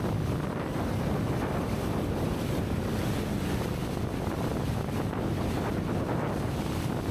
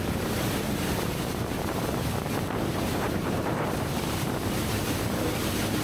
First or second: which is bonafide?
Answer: first